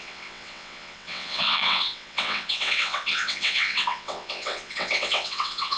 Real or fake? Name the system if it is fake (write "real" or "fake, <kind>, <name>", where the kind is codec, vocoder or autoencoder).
fake, vocoder, WaveNeXt